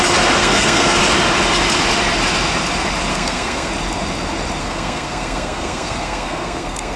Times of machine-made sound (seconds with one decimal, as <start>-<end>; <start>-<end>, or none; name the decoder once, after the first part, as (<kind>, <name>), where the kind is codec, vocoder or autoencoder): 0.4-1.0 (codec, SNAC); 3.1-3.7; 4.6-7.0